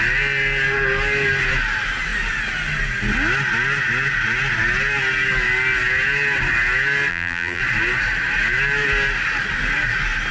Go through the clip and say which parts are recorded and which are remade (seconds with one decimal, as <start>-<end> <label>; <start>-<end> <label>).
0.0-7.1 recorded; 7.1-7.6 remade; 7.6-10.3 recorded

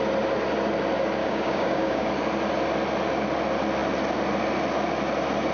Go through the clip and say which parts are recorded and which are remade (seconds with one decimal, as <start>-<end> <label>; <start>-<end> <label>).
0.0-1.2 recorded; 1.2-2.1 remade; 2.1-5.5 recorded

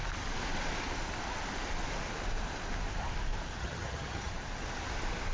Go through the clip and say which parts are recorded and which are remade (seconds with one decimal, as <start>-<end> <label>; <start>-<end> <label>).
0.0-3.6 recorded; 3.6-4.3 remade; 4.3-5.3 recorded

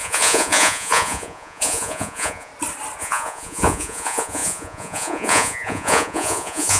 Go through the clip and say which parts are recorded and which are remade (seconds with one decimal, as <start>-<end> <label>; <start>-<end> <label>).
0.0-2.5 remade; 2.5-3.0 recorded; 3.0-6.8 remade

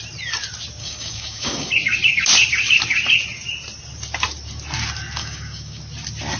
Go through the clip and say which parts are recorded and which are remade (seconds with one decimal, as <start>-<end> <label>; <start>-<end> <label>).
0.0-0.8 recorded; 0.8-1.7 remade; 1.7-5.2 recorded; 5.2-5.8 remade; 5.8-6.4 recorded

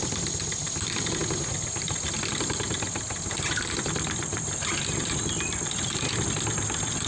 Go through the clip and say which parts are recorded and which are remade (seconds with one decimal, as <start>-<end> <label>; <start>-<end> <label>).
0.0-7.1 recorded

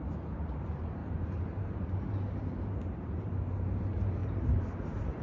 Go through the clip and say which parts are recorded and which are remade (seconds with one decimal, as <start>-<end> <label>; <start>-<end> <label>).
0.0-5.2 remade

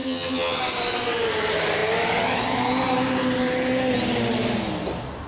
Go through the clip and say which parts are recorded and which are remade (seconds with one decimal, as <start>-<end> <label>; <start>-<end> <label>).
0.0-0.6 remade; 0.6-5.3 recorded